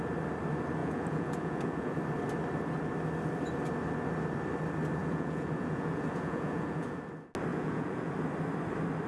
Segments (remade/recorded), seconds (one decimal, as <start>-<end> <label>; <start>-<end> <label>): 0.0-0.8 recorded; 0.8-2.0 remade; 2.0-5.0 recorded; 5.0-7.0 remade; 7.0-7.5 recorded; 7.5-8.1 remade; 8.1-9.1 recorded